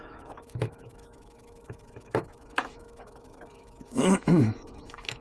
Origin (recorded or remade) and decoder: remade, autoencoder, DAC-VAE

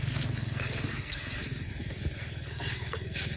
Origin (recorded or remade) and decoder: remade, codec, SNAC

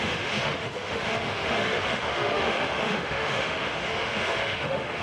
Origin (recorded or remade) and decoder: remade, autoencoder, DAC-VAE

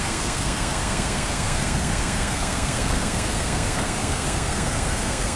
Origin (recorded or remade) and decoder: remade, codec, SNAC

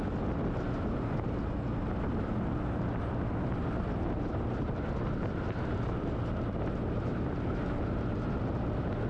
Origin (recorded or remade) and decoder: recorded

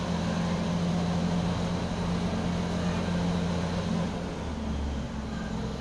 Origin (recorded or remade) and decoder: recorded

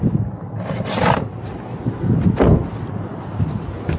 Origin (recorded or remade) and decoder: recorded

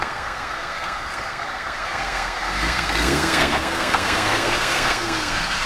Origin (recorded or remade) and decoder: remade, codec, SNAC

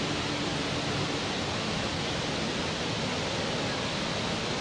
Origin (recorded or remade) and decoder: recorded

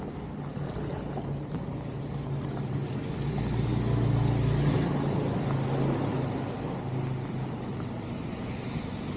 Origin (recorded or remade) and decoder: recorded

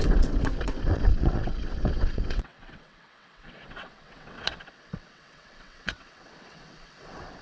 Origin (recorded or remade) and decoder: remade, vocoder, WaveNeXt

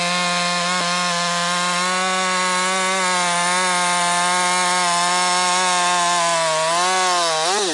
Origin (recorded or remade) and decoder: recorded